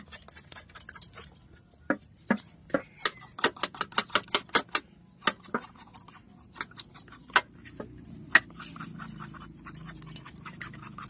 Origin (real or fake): real